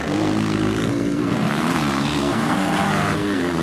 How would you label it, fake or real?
fake